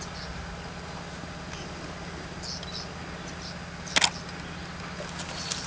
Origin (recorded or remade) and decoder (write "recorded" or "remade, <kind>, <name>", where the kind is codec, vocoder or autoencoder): recorded